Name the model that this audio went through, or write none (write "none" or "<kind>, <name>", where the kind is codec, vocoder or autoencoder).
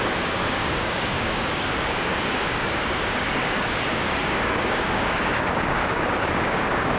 codec, DAC